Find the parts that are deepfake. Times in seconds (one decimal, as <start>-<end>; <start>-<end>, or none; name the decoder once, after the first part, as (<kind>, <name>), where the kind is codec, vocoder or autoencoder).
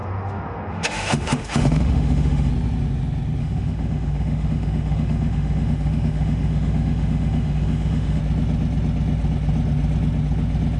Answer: 0.0-2.5 (autoencoder, DAC-VAE); 3.4-8.2